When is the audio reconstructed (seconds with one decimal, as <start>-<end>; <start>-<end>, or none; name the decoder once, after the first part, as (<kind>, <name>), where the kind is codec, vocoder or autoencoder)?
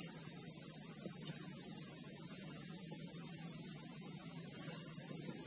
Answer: 1.4-4.7 (vocoder, Vocos)